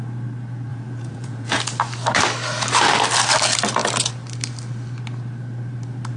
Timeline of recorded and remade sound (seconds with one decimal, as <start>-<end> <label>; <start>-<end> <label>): 0.0-0.7 recorded; 0.7-1.6 remade; 1.6-6.2 recorded